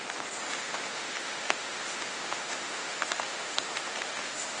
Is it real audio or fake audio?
fake